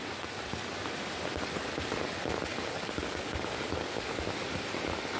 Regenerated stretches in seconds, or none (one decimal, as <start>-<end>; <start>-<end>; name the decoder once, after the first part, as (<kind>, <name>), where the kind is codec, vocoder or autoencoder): 2.5-4.3 (codec, DAC)